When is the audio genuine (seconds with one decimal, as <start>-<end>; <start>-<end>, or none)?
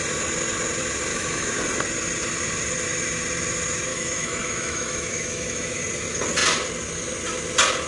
0.0-1.1; 1.6-3.9; 5.8-7.9